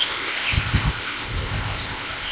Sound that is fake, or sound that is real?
fake